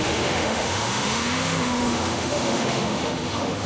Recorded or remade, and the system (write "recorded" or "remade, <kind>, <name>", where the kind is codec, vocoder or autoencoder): remade, autoencoder, DAC-VAE